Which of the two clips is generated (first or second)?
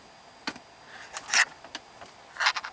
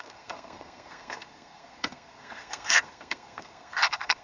second